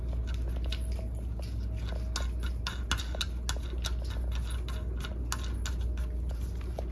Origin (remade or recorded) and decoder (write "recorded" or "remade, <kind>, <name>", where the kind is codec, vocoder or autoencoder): recorded